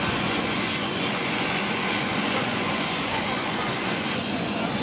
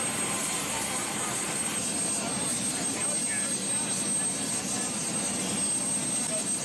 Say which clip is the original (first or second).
second